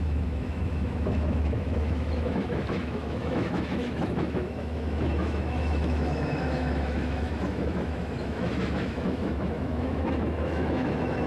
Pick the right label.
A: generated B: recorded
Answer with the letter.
A